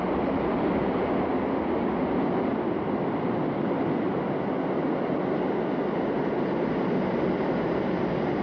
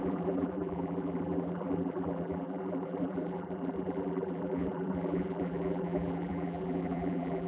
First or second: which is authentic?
first